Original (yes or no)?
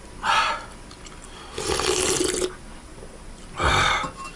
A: yes